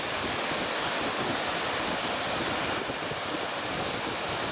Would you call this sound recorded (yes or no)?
yes